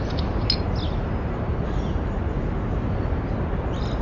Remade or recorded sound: recorded